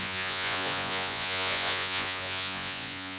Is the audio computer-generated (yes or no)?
yes